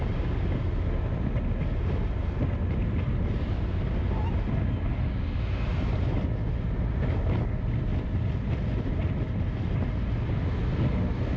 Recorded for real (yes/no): yes